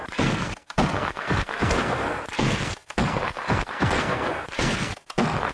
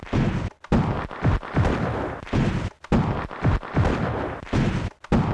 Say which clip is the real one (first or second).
second